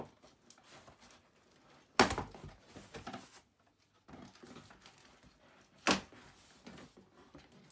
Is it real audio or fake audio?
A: real